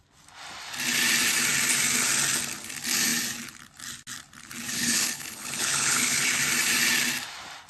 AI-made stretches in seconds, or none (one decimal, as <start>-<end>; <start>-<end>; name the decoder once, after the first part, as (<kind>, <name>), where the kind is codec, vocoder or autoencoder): 4.7-6.4 (codec, HILCodec)